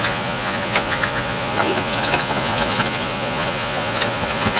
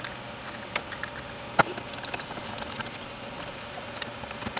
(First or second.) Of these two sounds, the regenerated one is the first